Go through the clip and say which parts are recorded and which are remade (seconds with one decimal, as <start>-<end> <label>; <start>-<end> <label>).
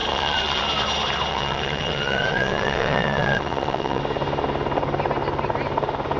0.0-0.6 remade; 0.6-1.3 recorded; 1.3-4.0 remade; 4.0-6.2 recorded